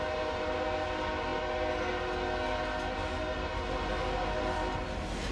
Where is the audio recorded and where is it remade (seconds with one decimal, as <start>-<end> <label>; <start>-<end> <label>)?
0.0-5.3 recorded